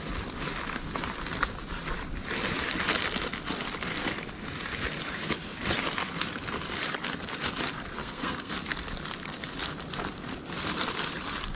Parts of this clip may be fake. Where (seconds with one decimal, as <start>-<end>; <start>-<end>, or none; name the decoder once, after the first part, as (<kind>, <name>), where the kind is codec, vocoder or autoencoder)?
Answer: 8.0-8.5 (codec, SNAC)